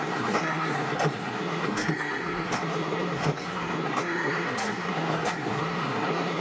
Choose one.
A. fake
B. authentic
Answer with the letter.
A